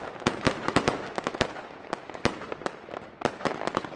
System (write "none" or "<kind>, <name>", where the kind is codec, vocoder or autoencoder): none